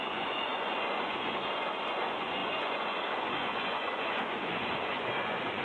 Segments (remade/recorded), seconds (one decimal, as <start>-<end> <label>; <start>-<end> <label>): 0.0-5.6 remade